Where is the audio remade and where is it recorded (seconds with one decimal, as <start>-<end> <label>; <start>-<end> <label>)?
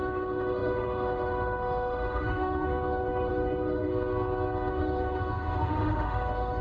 0.0-3.9 remade; 3.9-4.7 recorded; 4.7-6.6 remade